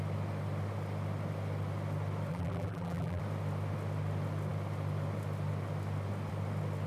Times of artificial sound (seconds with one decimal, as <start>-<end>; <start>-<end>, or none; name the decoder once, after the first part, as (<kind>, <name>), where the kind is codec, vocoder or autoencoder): 2.3-3.2 (vocoder, BigVGAN v2)